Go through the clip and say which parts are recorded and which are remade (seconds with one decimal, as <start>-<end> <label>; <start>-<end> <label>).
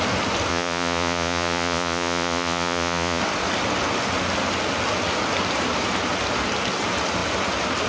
0.0-0.5 recorded; 0.5-3.2 remade; 3.2-7.9 recorded